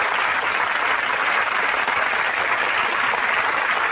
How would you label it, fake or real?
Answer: real